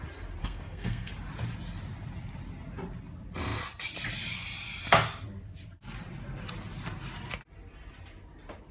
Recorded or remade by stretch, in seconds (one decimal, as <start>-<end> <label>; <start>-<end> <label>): 0.0-0.4 recorded; 0.4-1.1 remade; 1.1-8.7 recorded